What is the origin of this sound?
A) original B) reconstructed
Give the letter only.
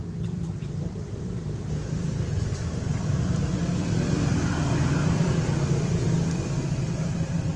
B